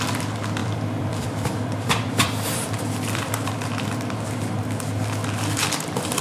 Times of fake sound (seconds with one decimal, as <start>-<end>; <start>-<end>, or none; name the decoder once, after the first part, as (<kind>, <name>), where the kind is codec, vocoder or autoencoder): 0.6-4.0 (vocoder, BigVGAN v2)